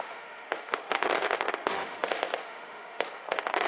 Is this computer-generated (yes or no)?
yes